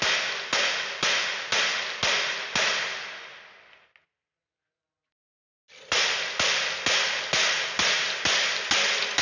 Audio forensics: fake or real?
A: real